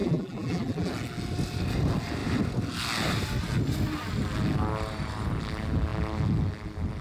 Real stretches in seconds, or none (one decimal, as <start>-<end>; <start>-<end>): 0.9-7.0